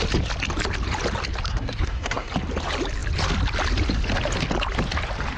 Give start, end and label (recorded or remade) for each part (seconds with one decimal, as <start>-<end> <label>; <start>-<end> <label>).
0.0-1.5 recorded; 1.5-2.3 remade; 2.3-5.4 recorded